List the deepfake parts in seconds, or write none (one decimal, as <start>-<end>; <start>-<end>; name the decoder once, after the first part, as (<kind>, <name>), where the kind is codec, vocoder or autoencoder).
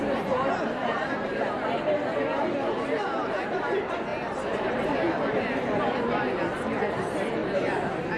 4.1-6.8 (vocoder, BigVGAN v2); 7.4-8.2